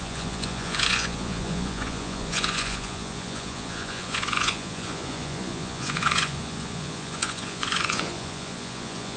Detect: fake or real fake